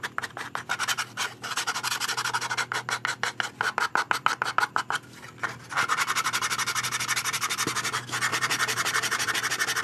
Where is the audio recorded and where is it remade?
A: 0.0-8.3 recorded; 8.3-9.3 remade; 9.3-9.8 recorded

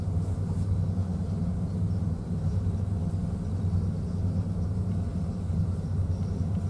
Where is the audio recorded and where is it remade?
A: 0.0-1.0 recorded; 1.0-2.8 remade; 2.8-5.1 recorded; 5.1-6.7 remade

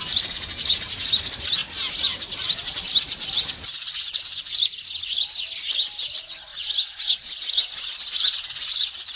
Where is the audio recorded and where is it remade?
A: 0.0-1.6 recorded; 1.6-5.0 remade; 5.0-9.2 recorded